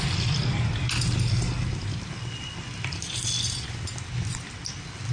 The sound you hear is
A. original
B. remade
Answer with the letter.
A